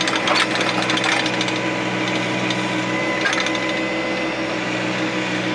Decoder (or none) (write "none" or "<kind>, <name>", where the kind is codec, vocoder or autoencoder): none